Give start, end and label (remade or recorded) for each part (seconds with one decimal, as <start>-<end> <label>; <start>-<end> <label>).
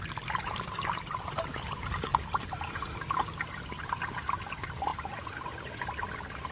0.0-2.1 remade; 2.1-4.5 recorded; 4.5-6.5 remade